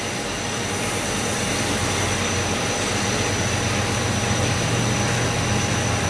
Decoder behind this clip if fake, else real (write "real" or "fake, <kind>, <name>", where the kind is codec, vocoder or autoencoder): real